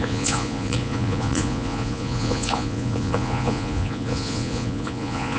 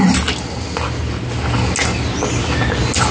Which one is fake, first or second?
first